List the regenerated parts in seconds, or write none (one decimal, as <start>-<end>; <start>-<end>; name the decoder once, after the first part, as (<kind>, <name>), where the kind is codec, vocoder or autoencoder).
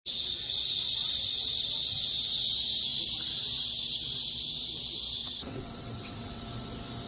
5.2-6.4 (vocoder, WaveNeXt)